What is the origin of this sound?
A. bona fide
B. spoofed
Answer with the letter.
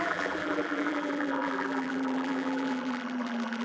B